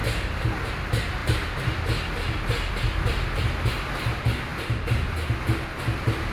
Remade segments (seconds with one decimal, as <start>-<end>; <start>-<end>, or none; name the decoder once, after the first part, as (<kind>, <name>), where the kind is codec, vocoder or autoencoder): none

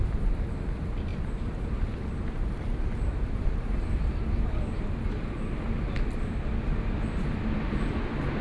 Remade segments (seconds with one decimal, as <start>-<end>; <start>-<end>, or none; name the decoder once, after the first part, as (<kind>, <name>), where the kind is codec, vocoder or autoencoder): 1.1-5.0 (vocoder, BigVGAN v2)

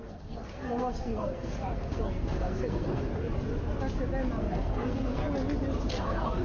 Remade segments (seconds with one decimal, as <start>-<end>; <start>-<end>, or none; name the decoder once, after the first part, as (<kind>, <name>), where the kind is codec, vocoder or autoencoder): 0.0-3.1 (codec, SNAC); 4.4-5.2; 6.0-6.4